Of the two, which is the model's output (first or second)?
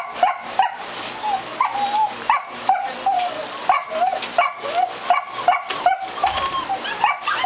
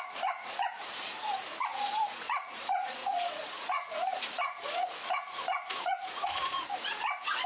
second